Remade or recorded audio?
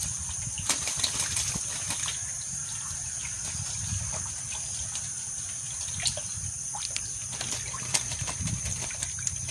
recorded